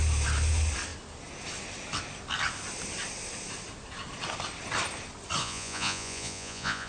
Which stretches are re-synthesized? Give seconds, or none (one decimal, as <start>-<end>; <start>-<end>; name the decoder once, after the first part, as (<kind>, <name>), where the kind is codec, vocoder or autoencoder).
5.4-6.9 (vocoder, Vocos)